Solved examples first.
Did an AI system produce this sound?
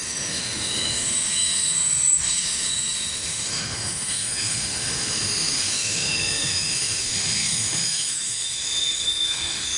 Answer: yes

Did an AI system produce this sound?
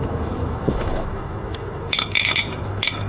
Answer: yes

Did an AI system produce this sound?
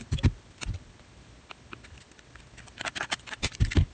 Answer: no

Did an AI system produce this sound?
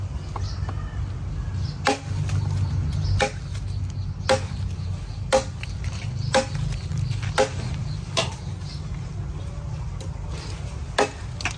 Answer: no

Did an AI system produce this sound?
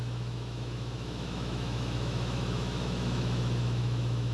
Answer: yes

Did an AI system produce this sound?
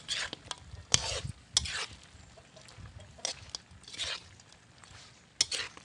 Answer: no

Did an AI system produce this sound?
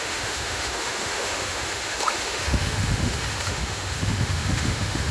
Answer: yes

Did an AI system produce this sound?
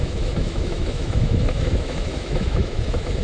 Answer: yes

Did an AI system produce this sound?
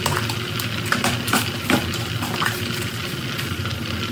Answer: no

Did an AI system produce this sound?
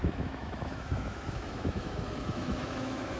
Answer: yes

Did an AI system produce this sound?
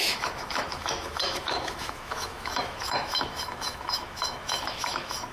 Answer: yes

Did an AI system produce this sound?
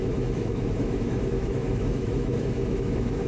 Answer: yes